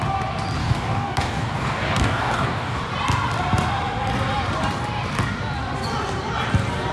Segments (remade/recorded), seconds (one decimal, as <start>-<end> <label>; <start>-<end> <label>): 0.0-0.6 recorded; 0.6-2.8 remade; 2.8-6.9 recorded